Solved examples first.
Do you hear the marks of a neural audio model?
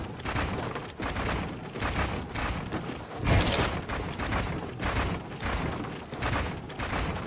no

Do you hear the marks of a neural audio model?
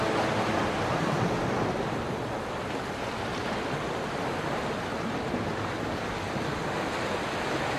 no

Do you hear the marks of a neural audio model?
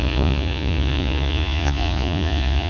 yes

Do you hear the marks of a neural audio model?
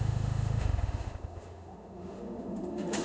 yes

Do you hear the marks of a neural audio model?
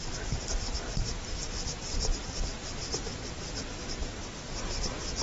no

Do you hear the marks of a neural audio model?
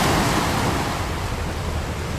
no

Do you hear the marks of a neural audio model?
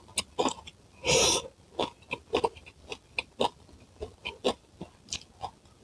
no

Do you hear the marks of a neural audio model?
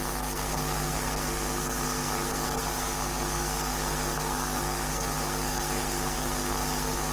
yes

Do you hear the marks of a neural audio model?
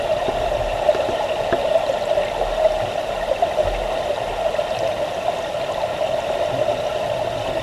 no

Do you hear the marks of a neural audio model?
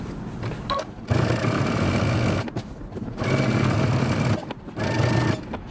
no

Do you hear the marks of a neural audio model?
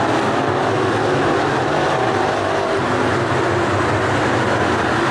no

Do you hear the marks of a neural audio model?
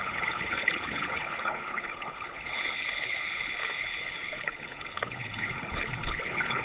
yes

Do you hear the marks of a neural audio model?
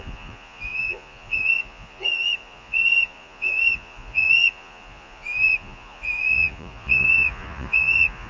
yes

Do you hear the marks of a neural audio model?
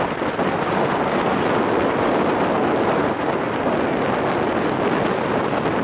no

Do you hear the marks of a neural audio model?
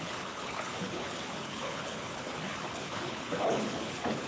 yes